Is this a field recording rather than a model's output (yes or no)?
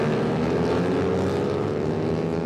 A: yes